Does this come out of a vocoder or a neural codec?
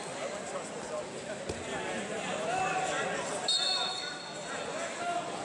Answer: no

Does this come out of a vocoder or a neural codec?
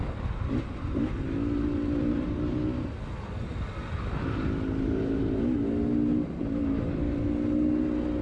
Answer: no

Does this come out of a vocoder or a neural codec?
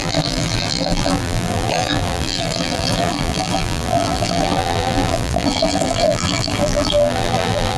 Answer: yes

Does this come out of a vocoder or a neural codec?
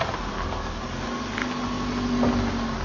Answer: no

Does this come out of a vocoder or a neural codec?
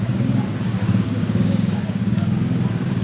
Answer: yes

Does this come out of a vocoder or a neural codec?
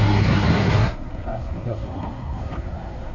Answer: yes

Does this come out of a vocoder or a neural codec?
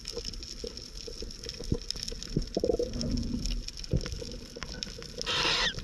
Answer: no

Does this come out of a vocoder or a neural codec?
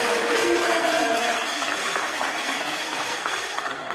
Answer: yes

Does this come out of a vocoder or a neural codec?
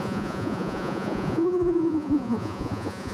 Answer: yes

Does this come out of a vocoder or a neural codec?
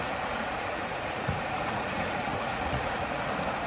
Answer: yes